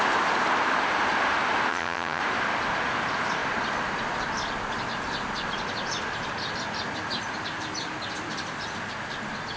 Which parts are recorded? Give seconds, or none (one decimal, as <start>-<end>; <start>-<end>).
0.0-1.7; 2.2-9.6